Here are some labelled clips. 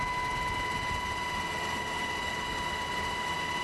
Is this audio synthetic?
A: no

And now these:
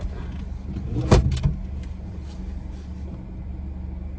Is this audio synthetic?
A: no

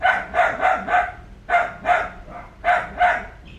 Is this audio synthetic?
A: no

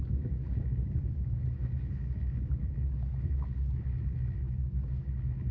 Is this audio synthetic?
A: yes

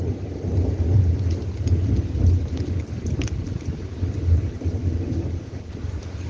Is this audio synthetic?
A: no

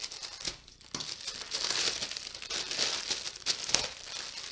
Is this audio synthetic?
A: no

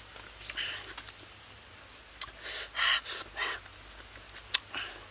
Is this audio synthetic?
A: no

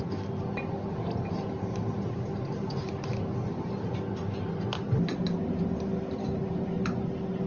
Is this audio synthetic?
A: no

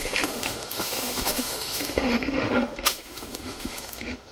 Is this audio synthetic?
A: yes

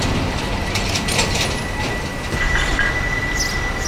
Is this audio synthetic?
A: no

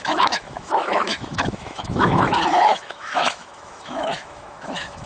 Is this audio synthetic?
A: yes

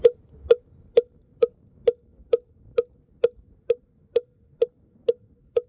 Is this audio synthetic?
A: no